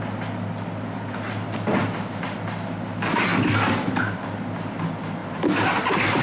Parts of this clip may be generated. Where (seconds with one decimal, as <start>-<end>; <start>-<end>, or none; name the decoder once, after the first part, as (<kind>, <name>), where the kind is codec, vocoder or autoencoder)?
none

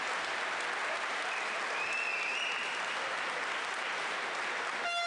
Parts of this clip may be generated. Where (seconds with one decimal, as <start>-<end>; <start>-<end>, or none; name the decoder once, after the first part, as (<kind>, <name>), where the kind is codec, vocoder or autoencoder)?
none

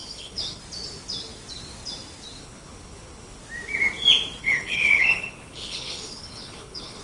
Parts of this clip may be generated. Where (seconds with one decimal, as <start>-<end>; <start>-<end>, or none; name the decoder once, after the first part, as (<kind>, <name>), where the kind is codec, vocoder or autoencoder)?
0.0-0.6 (codec, HILCodec); 2.4-3.4; 4.4-7.0

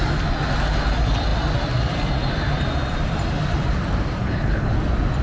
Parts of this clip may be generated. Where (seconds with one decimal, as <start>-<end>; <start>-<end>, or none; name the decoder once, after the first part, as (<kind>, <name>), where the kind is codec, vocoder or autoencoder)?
4.2-4.7 (codec, HILCodec)

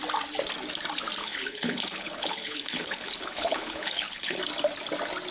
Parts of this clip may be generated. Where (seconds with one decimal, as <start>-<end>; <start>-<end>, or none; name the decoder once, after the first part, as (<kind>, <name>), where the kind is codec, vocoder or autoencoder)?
1.2-4.4 (codec, HILCodec)

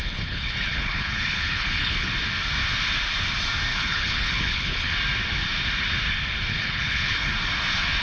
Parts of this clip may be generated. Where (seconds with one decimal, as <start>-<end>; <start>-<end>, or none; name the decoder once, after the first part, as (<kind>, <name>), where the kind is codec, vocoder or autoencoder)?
0.0-2.1 (codec, HILCodec); 3.7-4.9; 6.5-7.3